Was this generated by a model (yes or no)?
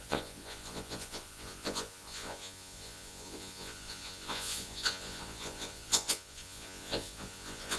yes